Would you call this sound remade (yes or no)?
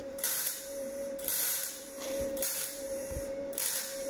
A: yes